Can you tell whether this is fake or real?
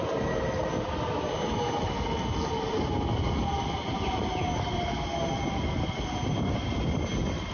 real